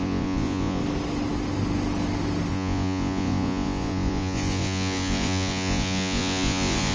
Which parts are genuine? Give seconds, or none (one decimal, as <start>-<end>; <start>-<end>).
0.8-2.5